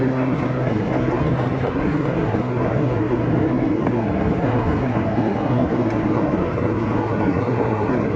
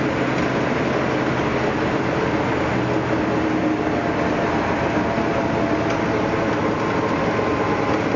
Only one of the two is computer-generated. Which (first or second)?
first